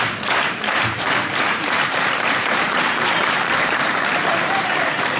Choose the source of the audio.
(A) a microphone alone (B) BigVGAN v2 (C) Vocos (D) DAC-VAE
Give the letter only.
B